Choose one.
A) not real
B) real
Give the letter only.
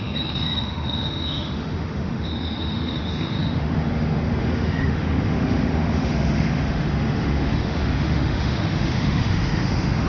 A